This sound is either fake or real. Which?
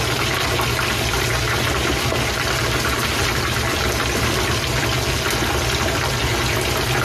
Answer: real